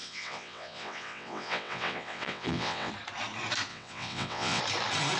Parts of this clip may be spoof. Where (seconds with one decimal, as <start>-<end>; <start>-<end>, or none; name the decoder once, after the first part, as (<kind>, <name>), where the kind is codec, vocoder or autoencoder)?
0.0-2.9 (vocoder, WaveNeXt); 3.7-4.6